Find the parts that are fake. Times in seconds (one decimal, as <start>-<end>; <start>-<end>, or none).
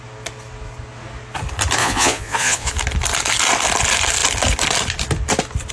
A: 1.8-2.7